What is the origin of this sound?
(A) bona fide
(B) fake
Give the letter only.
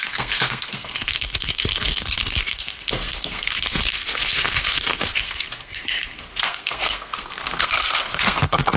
B